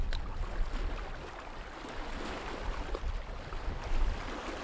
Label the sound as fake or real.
real